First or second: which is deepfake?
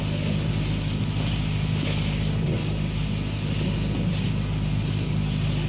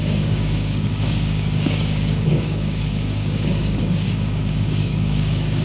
second